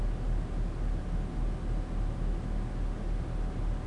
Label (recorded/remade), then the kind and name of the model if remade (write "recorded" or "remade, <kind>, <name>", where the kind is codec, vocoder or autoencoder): recorded